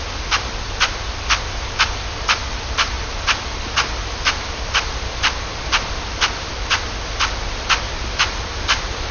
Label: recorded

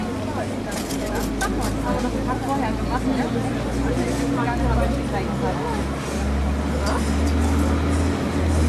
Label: recorded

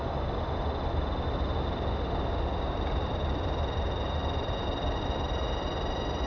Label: recorded